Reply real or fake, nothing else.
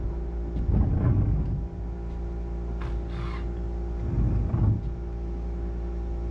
real